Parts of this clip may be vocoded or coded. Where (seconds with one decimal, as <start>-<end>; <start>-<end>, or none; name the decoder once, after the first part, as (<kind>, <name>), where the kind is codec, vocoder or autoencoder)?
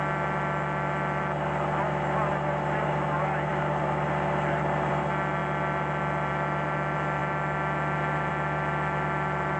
none